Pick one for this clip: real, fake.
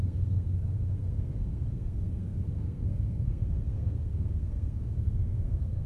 fake